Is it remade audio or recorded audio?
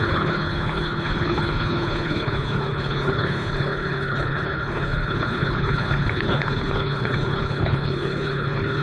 remade